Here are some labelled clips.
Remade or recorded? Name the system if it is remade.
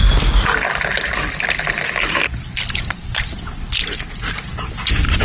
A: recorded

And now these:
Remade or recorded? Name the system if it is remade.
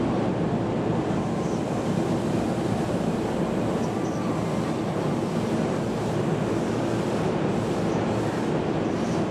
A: recorded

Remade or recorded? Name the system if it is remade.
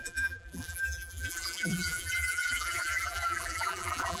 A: remade, vocoder, BigVGAN v2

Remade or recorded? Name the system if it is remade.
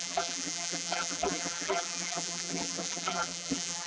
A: remade, vocoder, BigVGAN v2